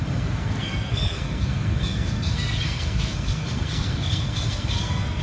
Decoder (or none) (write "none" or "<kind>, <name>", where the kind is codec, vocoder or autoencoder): codec, SNAC